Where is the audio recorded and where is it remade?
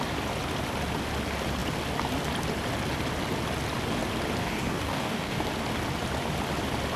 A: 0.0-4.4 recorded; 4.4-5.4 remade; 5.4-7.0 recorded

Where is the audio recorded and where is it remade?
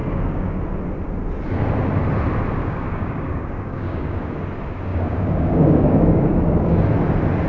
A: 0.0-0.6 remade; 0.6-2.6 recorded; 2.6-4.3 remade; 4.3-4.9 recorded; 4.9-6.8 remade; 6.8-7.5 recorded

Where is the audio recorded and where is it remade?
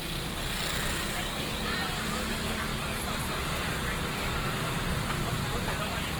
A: 0.0-1.2 recorded; 1.2-1.7 remade; 1.7-2.3 recorded; 2.3-2.7 remade; 2.7-6.2 recorded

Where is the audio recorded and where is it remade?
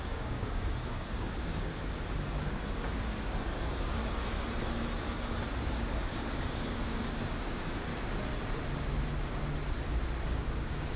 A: 0.0-1.7 remade; 1.7-2.5 recorded; 2.5-4.0 remade; 4.0-5.6 recorded; 5.6-7.9 remade; 7.9-10.2 recorded; 10.2-11.0 remade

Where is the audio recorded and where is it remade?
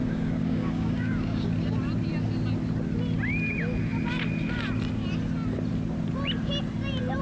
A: 0.0-1.5 remade; 1.5-7.2 recorded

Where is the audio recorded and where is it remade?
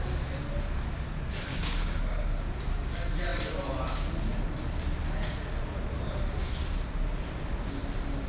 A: 0.0-1.5 recorded; 1.5-2.0 remade; 2.0-8.3 recorded